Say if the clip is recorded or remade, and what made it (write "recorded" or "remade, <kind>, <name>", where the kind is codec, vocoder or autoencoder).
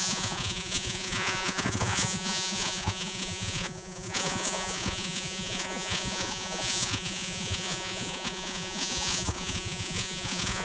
remade, vocoder, Vocos